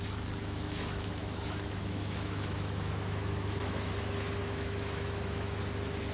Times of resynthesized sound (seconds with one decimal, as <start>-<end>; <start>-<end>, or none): 0.4-3.9; 4.4-5.6